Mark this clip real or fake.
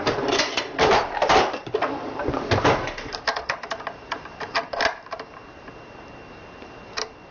fake